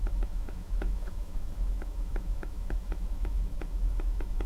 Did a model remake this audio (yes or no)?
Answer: yes